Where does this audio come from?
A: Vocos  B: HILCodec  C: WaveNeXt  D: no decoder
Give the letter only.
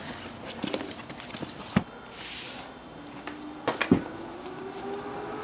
D